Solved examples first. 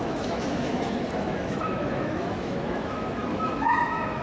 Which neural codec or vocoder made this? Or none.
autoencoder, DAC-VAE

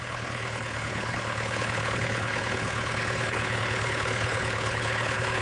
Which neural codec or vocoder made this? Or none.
codec, HILCodec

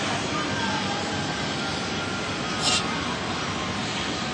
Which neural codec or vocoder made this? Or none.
none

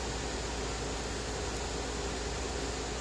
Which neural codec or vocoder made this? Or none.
none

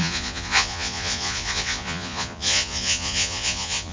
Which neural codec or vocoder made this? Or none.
vocoder, Vocos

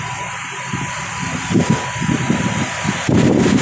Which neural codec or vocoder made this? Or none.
none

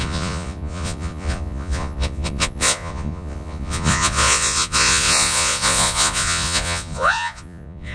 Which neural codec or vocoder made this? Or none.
vocoder, Vocos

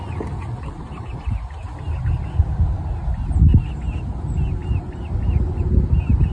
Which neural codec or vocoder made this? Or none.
none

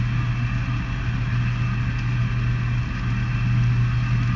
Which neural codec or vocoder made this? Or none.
none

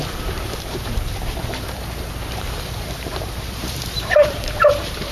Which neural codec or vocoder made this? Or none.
vocoder, BigVGAN v2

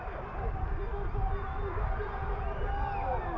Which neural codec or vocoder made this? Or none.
none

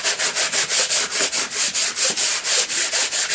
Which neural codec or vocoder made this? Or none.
none